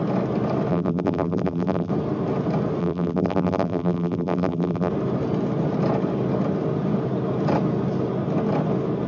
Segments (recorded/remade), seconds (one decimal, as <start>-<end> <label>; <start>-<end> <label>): 0.0-0.7 recorded; 0.7-1.9 remade; 1.9-2.8 recorded; 2.8-4.9 remade; 4.9-9.1 recorded